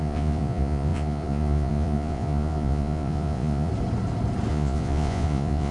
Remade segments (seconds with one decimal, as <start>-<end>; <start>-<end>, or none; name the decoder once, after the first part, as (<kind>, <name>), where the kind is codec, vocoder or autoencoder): 0.0-3.7 (vocoder, Vocos); 4.5-5.7